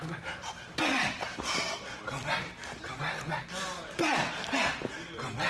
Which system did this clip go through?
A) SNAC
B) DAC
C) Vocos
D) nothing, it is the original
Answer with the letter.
D